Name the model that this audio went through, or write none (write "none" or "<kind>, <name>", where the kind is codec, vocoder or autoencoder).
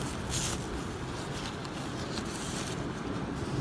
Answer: none